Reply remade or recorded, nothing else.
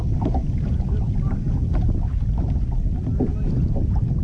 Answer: recorded